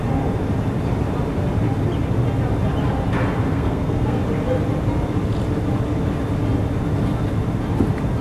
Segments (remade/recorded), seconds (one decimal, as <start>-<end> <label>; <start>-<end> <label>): 0.0-3.5 recorded; 3.5-4.2 remade; 4.2-8.2 recorded